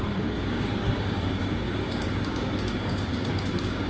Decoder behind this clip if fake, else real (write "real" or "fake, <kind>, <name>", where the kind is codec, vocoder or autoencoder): fake, codec, DAC